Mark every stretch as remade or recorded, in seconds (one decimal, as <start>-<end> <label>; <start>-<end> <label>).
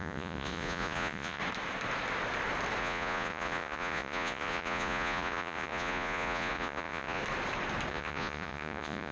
0.0-1.4 remade; 1.4-2.8 recorded; 2.8-7.2 remade; 7.2-7.9 recorded; 7.9-9.1 remade